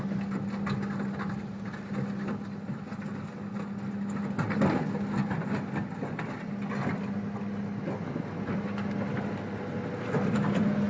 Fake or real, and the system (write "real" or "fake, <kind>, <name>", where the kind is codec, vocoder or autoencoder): real